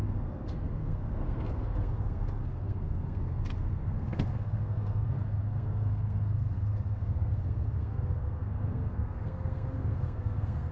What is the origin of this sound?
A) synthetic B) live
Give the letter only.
A